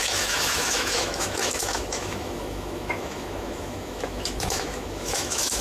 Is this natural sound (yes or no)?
no